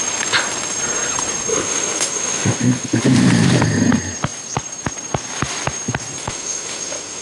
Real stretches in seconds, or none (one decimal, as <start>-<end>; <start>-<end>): 0.0-1.5; 3.0-6.2